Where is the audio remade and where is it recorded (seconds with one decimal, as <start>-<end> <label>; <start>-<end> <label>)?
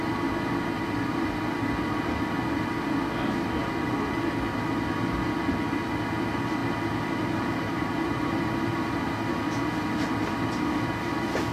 0.0-6.6 recorded; 6.6-9.3 remade; 9.3-11.5 recorded